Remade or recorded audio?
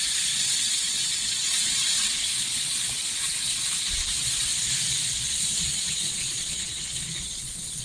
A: remade